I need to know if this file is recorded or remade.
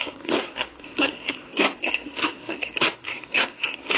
remade